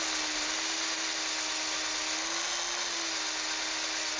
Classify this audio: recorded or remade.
recorded